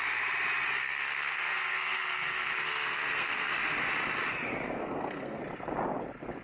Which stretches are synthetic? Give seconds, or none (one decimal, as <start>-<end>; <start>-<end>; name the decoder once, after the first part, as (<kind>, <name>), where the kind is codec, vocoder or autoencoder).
0.8-3.6 (codec, SNAC); 4.8-5.4